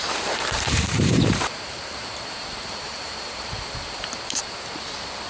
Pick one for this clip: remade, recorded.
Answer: remade